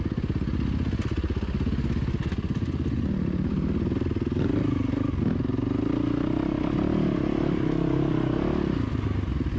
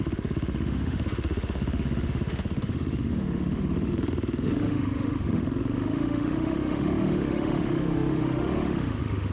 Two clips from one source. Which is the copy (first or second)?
second